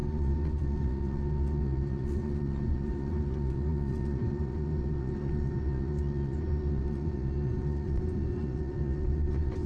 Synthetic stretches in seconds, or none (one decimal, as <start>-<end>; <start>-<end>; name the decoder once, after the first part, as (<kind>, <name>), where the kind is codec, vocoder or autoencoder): 0.0-9.7 (vocoder, Vocos)